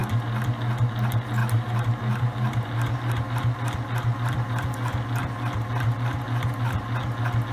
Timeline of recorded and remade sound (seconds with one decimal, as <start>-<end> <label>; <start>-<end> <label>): 0.0-1.4 recorded; 1.4-3.2 remade; 3.2-7.5 recorded